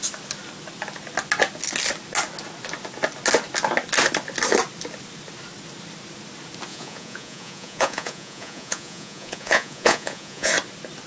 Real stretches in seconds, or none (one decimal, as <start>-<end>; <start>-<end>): 0.0-6.7; 10.5-11.1